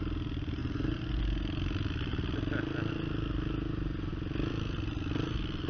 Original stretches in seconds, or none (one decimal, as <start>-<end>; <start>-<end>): 0.0-0.6; 1.2-4.1